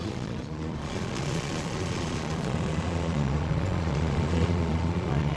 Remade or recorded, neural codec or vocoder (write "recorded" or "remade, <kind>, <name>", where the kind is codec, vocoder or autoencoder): remade, vocoder, Vocos